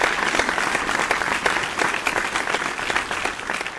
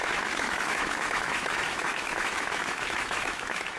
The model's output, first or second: second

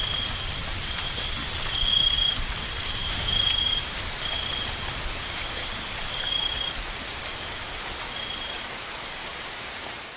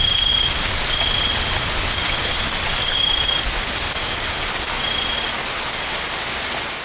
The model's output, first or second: first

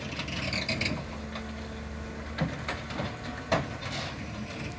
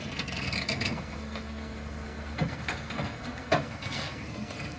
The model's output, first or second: second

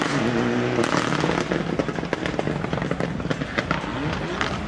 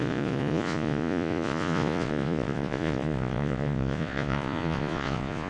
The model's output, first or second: second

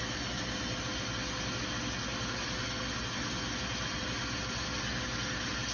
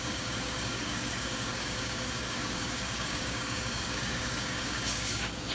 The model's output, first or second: second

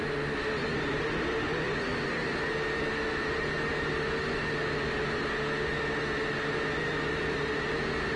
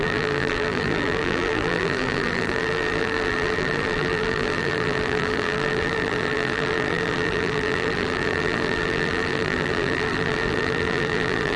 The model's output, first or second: second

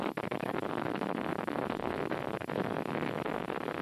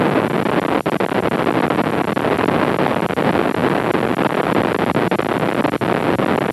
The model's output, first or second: first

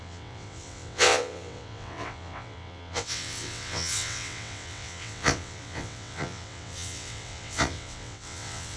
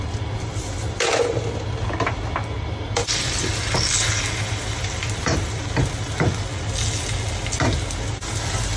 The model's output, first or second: first